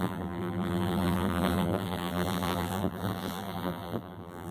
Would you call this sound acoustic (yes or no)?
no